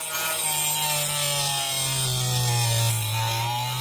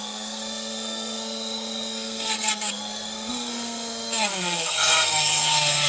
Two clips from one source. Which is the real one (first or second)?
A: first